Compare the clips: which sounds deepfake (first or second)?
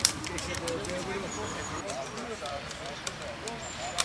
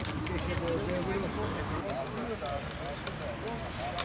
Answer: first